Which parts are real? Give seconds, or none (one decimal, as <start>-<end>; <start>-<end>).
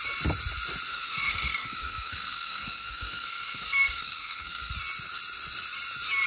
0.0-0.9; 4.7-6.3